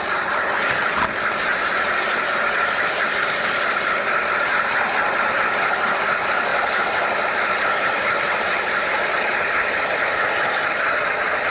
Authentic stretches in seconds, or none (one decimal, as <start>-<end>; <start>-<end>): 0.0-11.5